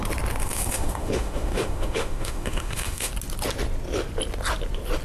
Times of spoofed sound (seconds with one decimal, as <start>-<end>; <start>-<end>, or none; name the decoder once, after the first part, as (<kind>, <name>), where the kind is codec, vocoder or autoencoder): 0.4-3.1 (autoencoder, DAC-VAE)